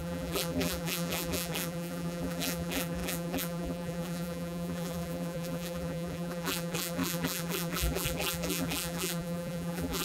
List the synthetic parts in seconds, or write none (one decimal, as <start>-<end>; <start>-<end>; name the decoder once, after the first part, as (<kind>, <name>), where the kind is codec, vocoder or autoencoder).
0.0-10.0 (vocoder, BigVGAN v2)